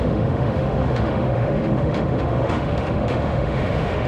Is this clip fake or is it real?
fake